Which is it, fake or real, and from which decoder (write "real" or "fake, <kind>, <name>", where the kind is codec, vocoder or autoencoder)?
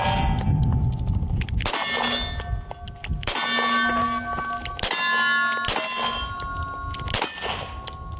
real